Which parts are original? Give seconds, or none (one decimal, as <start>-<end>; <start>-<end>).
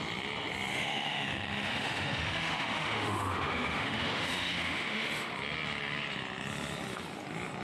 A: 0.0-0.7; 5.3-7.6